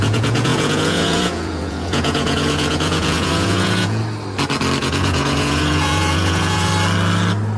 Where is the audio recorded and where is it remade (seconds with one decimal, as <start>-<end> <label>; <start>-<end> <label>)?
0.0-4.0 remade; 4.0-4.8 recorded; 4.8-6.7 remade; 6.7-7.6 recorded